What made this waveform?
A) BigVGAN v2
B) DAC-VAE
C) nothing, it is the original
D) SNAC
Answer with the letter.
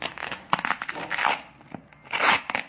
C